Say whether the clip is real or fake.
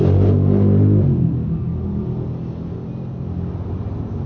real